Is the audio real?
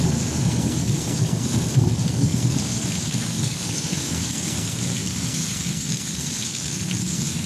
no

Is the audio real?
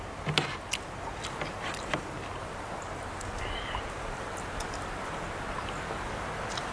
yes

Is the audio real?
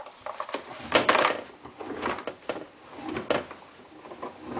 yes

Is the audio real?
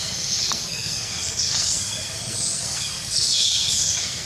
no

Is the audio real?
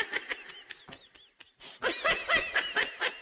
yes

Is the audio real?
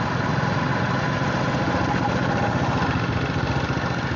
yes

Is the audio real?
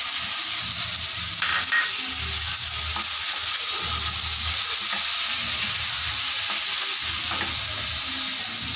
yes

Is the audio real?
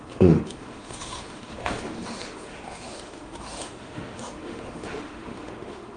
no